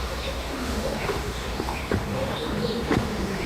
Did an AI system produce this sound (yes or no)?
yes